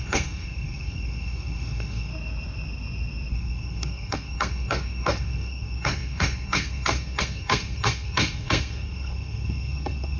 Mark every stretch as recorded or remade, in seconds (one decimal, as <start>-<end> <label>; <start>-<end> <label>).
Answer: 0.0-2.1 remade; 2.1-3.3 recorded; 3.3-10.2 remade